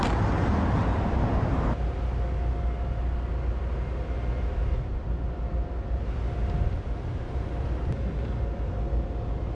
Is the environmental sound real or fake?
real